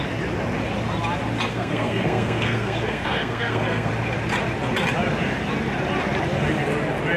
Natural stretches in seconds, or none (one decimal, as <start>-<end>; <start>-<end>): 0.0-1.5; 3.9-7.2